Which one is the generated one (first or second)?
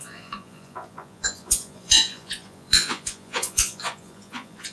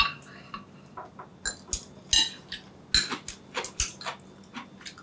first